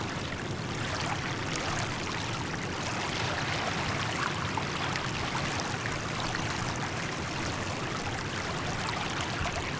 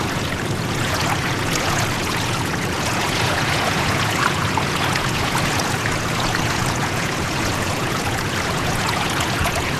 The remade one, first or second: second